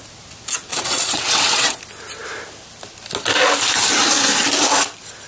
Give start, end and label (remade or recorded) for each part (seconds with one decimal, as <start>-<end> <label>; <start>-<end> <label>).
0.0-0.7 recorded; 0.7-1.8 remade; 1.8-5.3 recorded